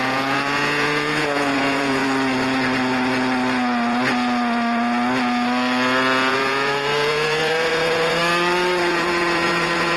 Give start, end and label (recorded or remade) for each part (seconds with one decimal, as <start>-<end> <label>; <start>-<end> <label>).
0.0-2.0 remade; 2.0-6.3 recorded; 6.3-8.2 remade; 8.2-8.9 recorded; 8.9-10.0 remade